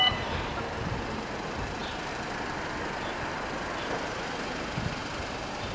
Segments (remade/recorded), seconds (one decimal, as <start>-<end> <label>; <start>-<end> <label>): 0.0-1.8 recorded; 1.8-2.3 remade; 2.3-5.0 recorded; 5.0-5.7 remade